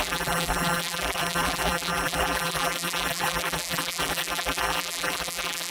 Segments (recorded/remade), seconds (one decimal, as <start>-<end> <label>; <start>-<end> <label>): 0.0-5.7 remade